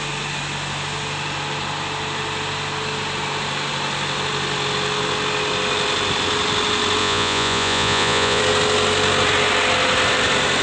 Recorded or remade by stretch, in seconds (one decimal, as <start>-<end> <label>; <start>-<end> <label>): 0.0-7.0 recorded; 7.0-8.4 remade; 8.4-10.6 recorded